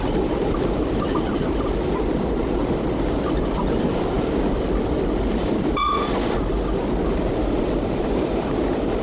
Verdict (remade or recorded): recorded